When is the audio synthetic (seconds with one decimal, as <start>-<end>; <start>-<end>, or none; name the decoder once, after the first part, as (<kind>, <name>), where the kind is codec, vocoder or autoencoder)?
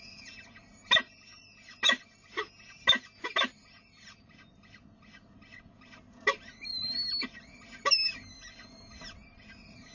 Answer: none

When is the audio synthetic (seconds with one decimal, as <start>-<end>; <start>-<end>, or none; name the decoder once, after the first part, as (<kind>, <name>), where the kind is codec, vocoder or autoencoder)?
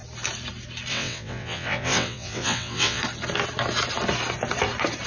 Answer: 0.9-3.0 (vocoder, WaveNeXt)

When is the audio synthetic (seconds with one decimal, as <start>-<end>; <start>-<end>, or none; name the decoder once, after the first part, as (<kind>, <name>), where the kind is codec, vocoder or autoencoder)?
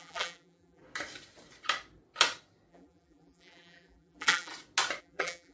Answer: 0.0-0.8 (vocoder, BigVGAN v2); 2.7-4.5; 5.0-5.5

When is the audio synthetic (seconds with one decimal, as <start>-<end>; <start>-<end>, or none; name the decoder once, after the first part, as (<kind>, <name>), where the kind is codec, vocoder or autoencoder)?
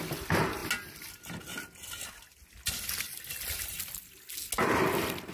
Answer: none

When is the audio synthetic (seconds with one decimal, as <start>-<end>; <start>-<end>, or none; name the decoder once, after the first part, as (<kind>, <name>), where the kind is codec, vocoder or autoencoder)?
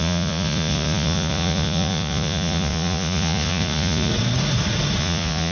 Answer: 0.0-4.1 (vocoder, Vocos); 5.0-5.5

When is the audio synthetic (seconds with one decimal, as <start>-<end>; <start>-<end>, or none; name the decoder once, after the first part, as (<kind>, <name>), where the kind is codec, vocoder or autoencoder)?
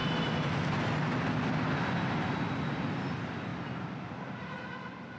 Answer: none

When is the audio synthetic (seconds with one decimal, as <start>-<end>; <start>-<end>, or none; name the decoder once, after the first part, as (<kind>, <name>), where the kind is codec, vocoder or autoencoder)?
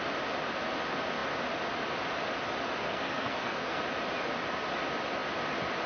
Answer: 2.8-3.8 (codec, SNAC)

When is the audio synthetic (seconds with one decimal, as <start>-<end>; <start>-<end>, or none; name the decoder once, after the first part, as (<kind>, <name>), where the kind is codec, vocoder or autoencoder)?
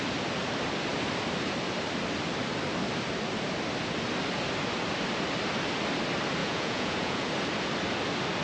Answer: 6.4-7.3 (vocoder, Vocos)